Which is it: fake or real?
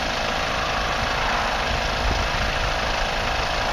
real